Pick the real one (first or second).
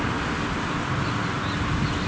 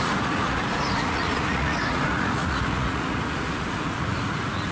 first